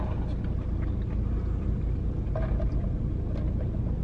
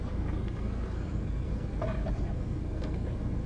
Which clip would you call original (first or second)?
first